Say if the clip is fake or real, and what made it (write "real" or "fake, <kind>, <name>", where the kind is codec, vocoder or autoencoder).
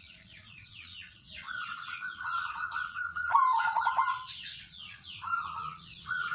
fake, vocoder, Vocos